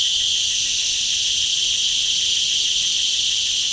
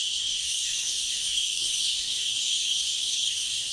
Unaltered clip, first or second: first